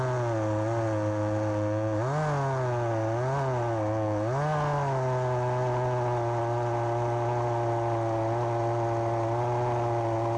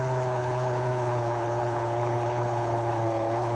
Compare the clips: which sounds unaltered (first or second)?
first